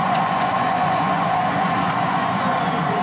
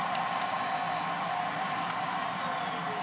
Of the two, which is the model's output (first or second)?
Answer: first